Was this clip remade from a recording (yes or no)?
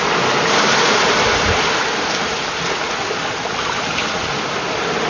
no